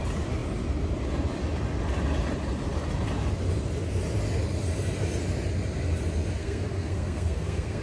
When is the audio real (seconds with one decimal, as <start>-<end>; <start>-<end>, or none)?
0.0-6.4